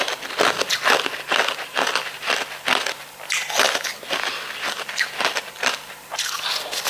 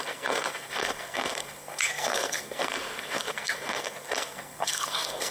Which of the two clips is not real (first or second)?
second